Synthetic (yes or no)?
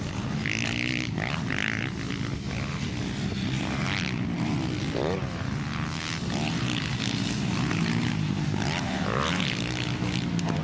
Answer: no